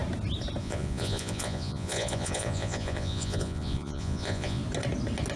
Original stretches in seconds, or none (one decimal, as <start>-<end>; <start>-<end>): 0.0-0.6; 4.6-5.4

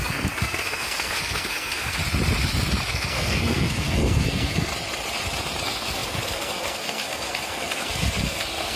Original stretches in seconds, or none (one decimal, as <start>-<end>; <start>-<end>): 2.0-2.9; 4.7-5.6

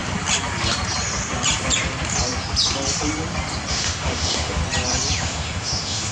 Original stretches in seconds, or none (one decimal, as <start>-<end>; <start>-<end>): 0.0-3.7; 4.6-5.2

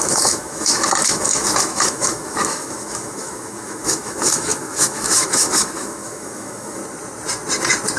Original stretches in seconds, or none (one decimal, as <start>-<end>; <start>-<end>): 6.8-8.0

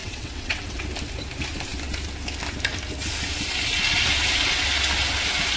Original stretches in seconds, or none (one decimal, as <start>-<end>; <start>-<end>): 0.8-5.6